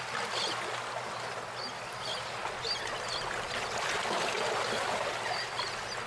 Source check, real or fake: real